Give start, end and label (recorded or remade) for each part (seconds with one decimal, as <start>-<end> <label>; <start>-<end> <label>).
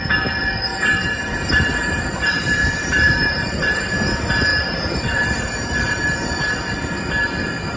0.0-0.7 recorded; 0.7-3.8 remade; 3.8-4.5 recorded; 4.5-6.4 remade; 6.4-7.8 recorded